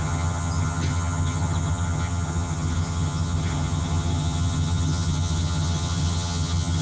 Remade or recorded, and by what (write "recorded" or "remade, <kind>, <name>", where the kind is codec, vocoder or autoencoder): remade, vocoder, HiFi-GAN